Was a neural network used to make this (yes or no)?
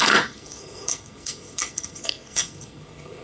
yes